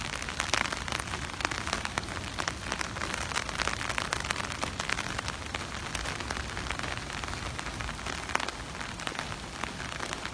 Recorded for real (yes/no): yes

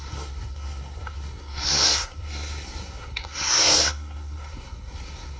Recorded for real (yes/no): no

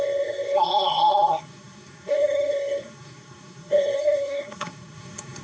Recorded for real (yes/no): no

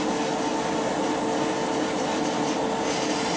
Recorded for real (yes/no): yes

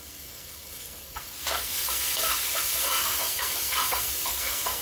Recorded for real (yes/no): no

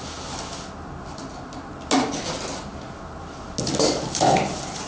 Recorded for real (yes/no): yes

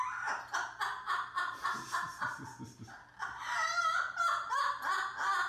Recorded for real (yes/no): yes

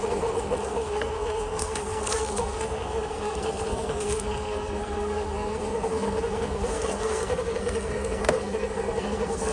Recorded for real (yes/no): no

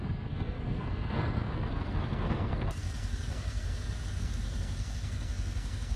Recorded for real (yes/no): no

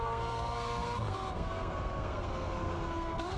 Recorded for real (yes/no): no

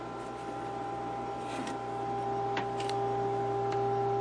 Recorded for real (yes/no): yes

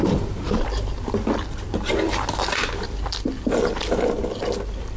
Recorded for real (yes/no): yes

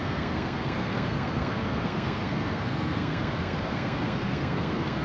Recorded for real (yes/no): no